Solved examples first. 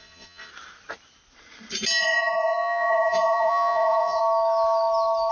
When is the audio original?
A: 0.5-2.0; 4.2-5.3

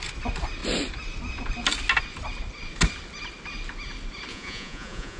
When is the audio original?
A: 0.0-4.3

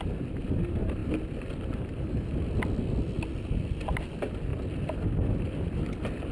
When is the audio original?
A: 0.0-6.3